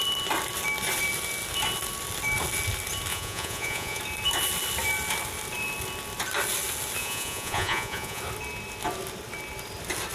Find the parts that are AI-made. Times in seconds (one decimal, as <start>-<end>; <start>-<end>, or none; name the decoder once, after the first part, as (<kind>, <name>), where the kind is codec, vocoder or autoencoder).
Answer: 3.1-4.0 (vocoder, Vocos); 7.0-8.2